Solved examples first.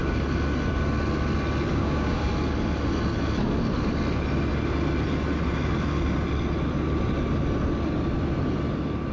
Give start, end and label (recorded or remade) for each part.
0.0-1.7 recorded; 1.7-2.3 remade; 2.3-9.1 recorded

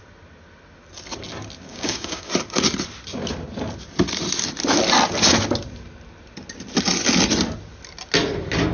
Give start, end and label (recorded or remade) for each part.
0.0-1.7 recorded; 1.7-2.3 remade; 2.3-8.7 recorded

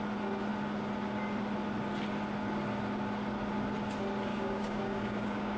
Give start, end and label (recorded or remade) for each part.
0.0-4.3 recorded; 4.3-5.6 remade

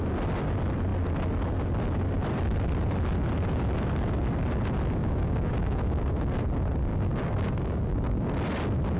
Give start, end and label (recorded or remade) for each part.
0.0-5.0 recorded; 5.0-6.4 remade; 6.4-6.9 recorded; 6.9-8.3 remade; 8.3-9.0 recorded

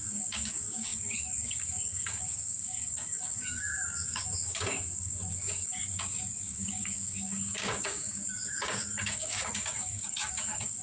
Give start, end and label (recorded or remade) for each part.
0.0-10.8 remade

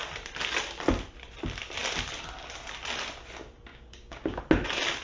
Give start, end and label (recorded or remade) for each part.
0.0-3.7 recorded; 3.7-4.4 remade; 4.4-5.0 recorded